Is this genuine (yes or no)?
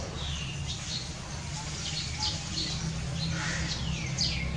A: yes